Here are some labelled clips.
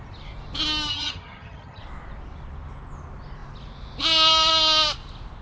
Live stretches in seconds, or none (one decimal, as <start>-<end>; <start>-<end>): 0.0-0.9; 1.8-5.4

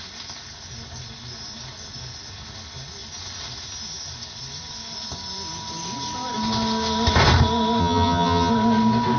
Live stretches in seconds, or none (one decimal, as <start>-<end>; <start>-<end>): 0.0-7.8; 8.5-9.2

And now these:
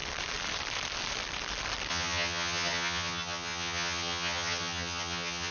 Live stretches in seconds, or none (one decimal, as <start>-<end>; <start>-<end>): 0.0-1.9